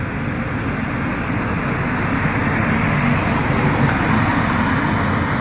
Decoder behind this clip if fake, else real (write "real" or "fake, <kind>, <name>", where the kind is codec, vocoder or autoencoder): real